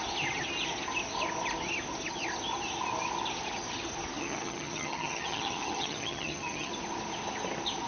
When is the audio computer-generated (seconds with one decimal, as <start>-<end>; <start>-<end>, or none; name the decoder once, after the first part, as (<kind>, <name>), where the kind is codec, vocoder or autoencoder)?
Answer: 4.2-6.7 (vocoder, HiFi-GAN)